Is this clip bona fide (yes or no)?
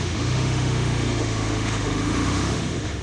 no